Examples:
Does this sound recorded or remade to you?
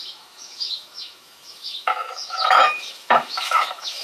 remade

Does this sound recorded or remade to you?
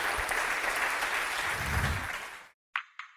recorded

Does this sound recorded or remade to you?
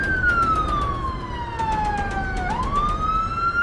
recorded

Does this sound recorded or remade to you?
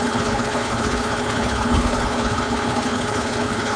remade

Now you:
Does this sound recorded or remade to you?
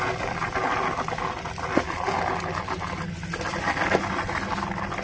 recorded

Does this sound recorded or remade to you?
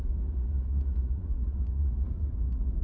remade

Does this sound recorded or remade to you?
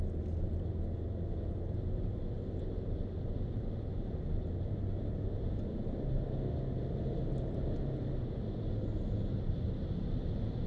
recorded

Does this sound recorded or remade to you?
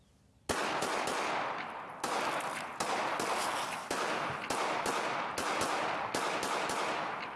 recorded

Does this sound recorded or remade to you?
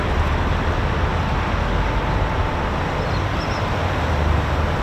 recorded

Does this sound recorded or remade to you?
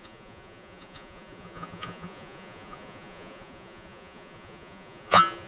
remade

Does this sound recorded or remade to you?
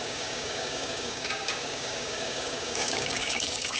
remade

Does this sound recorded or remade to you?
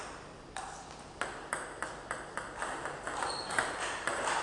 recorded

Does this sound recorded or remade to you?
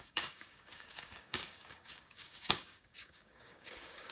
remade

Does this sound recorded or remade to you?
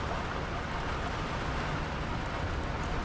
recorded